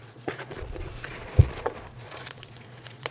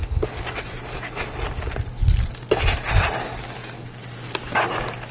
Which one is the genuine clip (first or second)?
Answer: second